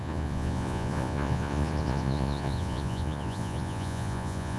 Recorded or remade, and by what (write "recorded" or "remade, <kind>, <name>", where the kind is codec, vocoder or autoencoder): remade, vocoder, Vocos